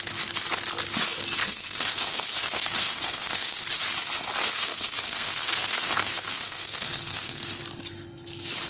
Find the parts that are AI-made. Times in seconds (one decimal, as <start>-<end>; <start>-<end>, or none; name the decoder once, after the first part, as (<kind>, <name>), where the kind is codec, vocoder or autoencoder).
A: 1.4-3.6 (codec, SNAC); 4.4-7.6